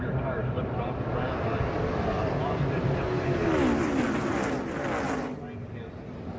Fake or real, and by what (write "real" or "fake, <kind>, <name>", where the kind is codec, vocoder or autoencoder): real